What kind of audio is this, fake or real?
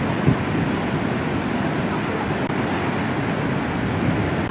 real